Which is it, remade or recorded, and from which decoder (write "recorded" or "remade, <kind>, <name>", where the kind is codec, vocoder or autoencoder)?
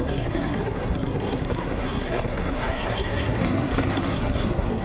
remade, codec, SNAC